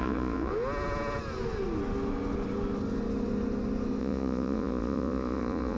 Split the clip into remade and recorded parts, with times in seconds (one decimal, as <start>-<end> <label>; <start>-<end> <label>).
0.0-0.5 remade; 0.5-4.0 recorded; 4.0-5.8 remade